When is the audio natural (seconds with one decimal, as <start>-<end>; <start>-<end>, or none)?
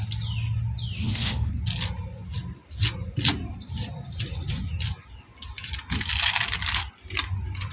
0.0-1.0; 1.5-7.7